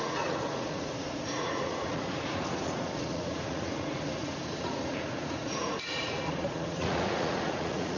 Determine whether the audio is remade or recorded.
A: remade